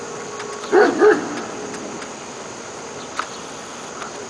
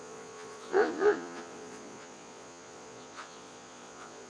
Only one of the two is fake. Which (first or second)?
second